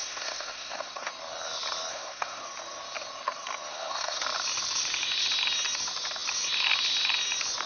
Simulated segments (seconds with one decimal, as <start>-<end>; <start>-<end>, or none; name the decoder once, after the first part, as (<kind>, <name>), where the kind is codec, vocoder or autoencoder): 0.0-1.1 (codec, SNAC); 1.9-2.4; 3.7-4.2